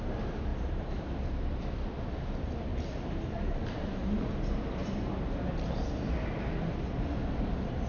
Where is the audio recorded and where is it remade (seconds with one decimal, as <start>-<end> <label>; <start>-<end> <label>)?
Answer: 0.0-0.5 recorded; 0.5-1.6 remade; 1.6-2.7 recorded; 2.7-5.5 remade; 5.5-7.9 recorded

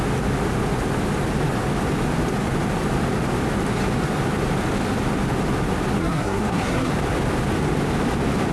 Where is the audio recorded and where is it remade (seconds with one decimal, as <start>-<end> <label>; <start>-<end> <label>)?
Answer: 0.0-6.0 recorded; 6.0-6.9 remade; 6.9-8.5 recorded

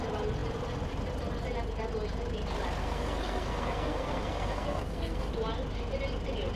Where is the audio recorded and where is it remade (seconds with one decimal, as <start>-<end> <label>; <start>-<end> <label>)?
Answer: 0.0-2.8 recorded; 2.8-5.3 remade; 5.3-6.6 recorded

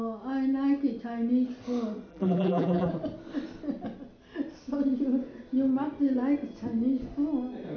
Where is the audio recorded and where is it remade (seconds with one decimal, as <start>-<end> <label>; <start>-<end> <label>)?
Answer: 0.0-2.1 recorded; 2.1-2.9 remade; 2.9-7.8 recorded

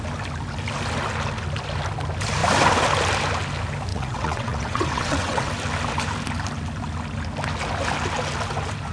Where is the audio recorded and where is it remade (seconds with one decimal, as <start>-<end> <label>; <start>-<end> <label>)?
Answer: 0.0-3.9 recorded; 3.9-5.5 remade; 5.5-8.9 recorded

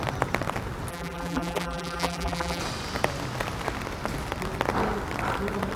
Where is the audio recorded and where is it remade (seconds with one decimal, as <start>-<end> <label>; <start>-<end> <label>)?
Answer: 0.0-0.9 recorded; 0.9-2.6 remade; 2.6-5.8 recorded

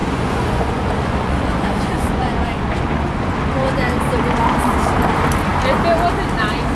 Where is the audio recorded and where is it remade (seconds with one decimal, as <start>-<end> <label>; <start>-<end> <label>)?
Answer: 0.0-3.3 remade; 3.3-6.7 recorded